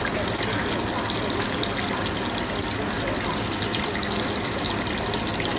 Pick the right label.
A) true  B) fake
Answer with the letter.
A